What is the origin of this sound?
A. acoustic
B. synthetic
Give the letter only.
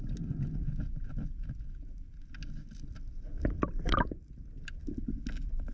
A